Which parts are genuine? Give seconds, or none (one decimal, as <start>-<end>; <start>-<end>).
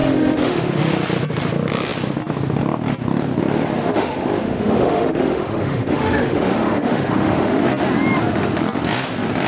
0.9-3.8; 7.6-9.5